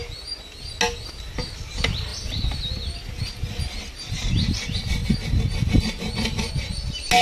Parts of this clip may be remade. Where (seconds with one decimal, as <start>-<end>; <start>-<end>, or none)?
none